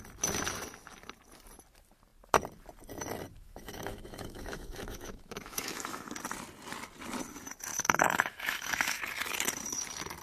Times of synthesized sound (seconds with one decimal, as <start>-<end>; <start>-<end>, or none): 3.3-6.1; 7.7-9.0